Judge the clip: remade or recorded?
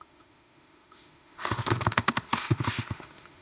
remade